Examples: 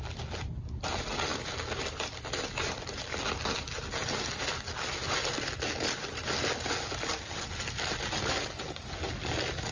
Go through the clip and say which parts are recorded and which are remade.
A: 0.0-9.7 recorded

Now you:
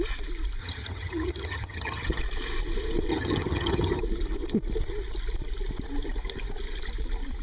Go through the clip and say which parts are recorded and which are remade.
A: 0.0-0.6 recorded; 0.6-2.2 remade; 2.2-3.1 recorded; 3.1-4.0 remade; 4.0-7.4 recorded

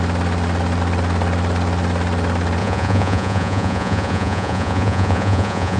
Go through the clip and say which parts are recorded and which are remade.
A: 0.0-2.6 recorded; 2.6-5.8 remade

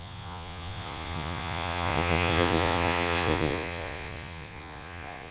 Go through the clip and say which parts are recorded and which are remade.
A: 0.0-5.3 remade

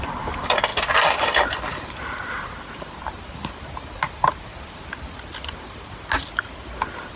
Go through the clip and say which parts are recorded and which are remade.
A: 0.0-7.2 recorded

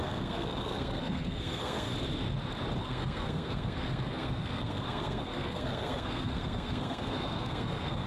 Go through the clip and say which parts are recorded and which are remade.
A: 0.0-1.9 remade; 1.9-2.8 recorded; 2.8-8.1 remade

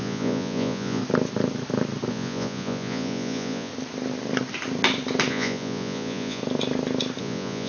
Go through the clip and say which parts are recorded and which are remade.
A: 0.0-1.0 remade; 1.0-2.1 recorded; 2.1-3.7 remade; 3.7-5.3 recorded; 5.3-6.4 remade; 6.4-7.2 recorded; 7.2-7.7 remade